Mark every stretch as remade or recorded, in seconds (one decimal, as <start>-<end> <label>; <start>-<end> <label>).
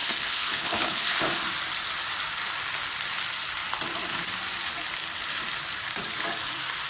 0.0-1.4 remade; 1.4-6.9 recorded